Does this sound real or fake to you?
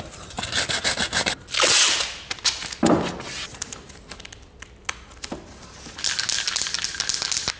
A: real